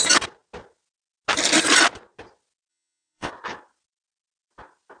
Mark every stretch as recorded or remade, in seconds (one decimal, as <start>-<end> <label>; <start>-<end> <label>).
0.0-2.7 recorded; 2.7-3.3 remade; 3.3-5.0 recorded